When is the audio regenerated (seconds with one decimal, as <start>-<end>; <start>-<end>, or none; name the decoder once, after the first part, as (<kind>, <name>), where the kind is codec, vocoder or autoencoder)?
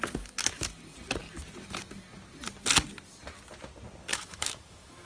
4.1-5.1 (autoencoder, DAC-VAE)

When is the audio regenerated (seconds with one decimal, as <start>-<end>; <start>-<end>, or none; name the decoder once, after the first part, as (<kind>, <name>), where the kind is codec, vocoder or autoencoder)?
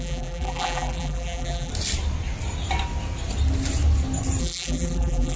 0.0-1.7 (vocoder, BigVGAN v2); 4.4-5.4